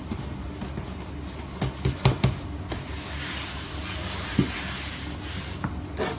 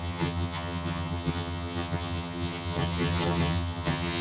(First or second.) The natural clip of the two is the first